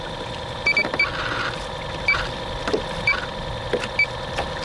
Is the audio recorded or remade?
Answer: recorded